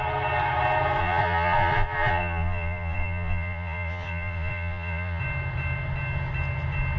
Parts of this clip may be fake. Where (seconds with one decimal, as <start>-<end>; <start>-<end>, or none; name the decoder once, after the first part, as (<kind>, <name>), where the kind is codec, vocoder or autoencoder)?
1.0-5.2 (vocoder, Vocos)